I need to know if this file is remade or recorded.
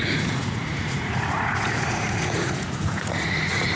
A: remade